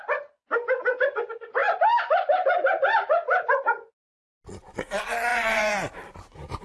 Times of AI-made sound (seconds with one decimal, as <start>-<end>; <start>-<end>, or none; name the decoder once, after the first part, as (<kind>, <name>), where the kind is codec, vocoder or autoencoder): 5.3-6.6 (vocoder, BigVGAN v2)